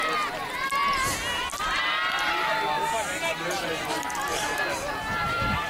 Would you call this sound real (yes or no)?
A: yes